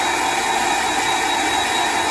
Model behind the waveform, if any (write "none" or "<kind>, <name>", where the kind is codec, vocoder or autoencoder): none